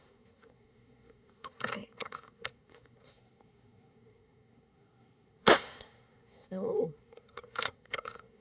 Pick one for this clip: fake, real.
fake